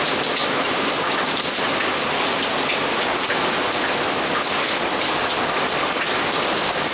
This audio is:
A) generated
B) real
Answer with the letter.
B